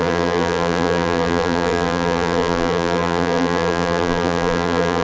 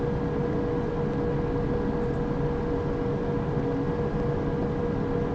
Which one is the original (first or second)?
second